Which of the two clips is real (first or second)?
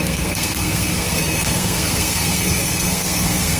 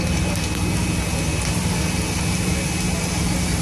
second